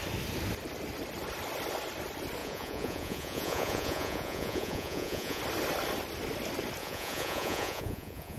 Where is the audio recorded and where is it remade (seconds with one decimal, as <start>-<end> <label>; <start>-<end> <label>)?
0.0-2.4 recorded; 2.4-5.4 remade; 5.4-6.8 recorded; 6.8-8.4 remade